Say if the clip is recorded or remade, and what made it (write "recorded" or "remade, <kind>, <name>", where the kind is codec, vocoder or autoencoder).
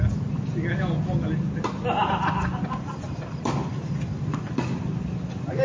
recorded